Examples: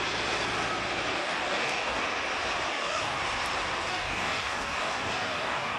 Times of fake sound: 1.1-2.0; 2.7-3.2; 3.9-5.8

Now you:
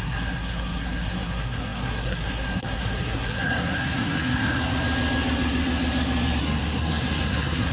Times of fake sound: 0.0-4.6; 6.4-7.7

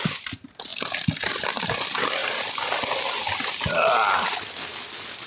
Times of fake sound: none

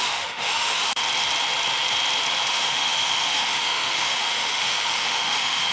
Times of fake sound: 0.0-1.0; 2.5-5.7

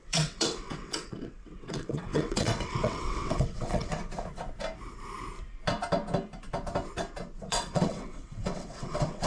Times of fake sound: 0.0-4.0; 7.4-9.3

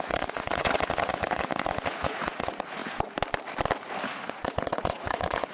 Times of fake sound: 0.0-2.8; 4.0-5.5